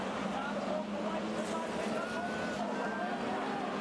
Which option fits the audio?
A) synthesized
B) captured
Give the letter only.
B